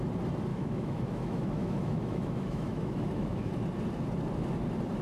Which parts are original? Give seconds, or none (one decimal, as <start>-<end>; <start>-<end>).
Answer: 0.0-0.5; 3.5-5.0